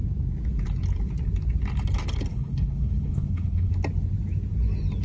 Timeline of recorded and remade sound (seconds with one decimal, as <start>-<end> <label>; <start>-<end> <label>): 0.0-2.3 recorded; 2.3-3.7 remade; 3.7-5.0 recorded